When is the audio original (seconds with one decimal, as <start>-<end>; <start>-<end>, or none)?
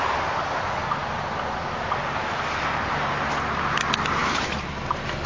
0.0-5.3